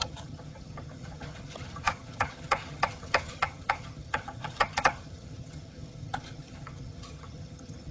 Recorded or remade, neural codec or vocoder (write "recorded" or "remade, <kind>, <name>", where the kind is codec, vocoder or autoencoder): remade, vocoder, HiFi-GAN